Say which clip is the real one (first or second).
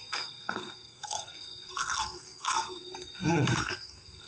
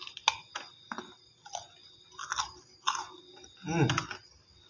second